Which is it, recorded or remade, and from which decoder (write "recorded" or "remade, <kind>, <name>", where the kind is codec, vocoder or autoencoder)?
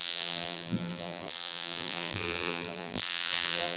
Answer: remade, vocoder, BigVGAN v2